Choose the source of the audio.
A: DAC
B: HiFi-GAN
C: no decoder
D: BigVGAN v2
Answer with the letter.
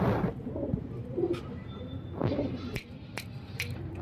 C